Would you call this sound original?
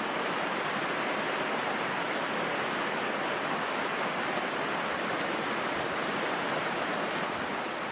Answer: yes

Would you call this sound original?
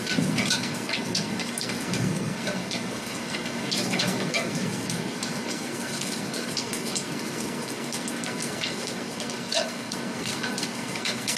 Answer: no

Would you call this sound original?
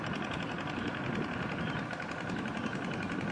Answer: yes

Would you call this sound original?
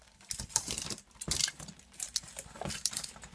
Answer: no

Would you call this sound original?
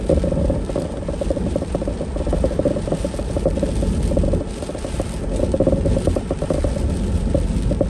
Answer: yes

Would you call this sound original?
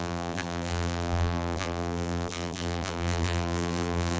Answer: no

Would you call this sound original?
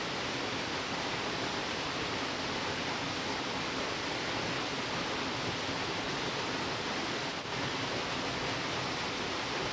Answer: yes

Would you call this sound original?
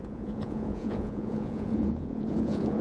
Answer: no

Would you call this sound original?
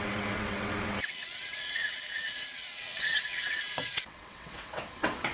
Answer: no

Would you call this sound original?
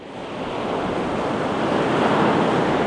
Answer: yes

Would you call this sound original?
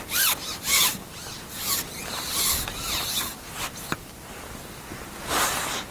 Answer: yes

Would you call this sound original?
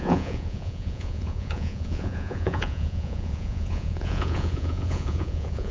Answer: no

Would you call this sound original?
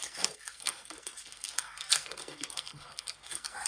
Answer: no